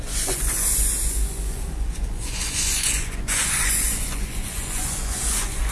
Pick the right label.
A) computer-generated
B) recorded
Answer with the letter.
A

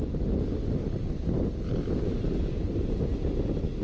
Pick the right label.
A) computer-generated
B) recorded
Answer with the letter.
B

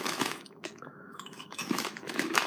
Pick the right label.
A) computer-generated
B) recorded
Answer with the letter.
A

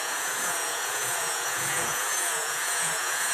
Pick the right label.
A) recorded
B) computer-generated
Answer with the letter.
B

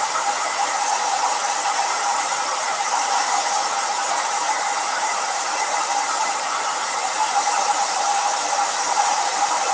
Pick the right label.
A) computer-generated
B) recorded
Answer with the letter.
A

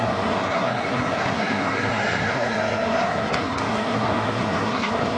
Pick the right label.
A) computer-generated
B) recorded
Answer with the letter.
A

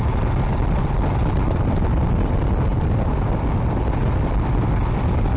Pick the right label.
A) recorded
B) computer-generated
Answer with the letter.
A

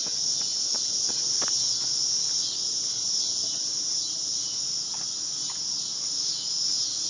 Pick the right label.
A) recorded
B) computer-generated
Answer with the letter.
A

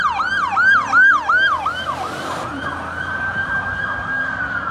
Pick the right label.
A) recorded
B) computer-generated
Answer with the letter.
A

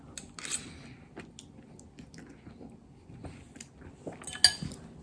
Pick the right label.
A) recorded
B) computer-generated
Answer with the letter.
A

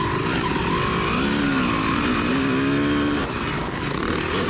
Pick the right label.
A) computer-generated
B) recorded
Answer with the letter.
B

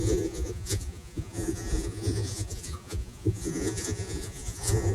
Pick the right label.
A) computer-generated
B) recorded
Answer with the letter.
A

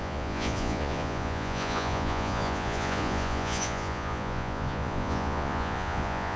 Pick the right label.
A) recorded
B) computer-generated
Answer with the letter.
B